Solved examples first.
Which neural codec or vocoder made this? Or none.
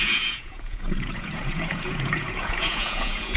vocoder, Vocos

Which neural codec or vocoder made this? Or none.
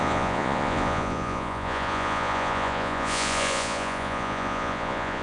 vocoder, Vocos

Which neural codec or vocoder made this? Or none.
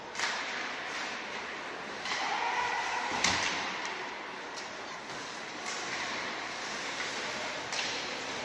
vocoder, BigVGAN v2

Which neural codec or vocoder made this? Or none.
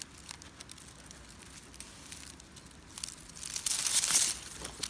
none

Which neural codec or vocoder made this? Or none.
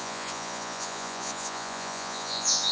vocoder, Vocos